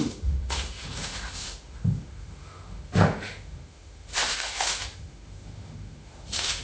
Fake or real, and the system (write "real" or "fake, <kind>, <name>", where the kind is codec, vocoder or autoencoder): fake, autoencoder, DAC-VAE